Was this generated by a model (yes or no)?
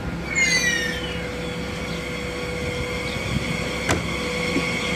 no